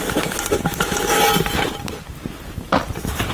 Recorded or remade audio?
recorded